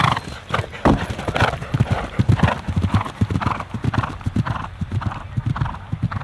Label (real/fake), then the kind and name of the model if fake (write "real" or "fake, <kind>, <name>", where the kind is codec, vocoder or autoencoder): real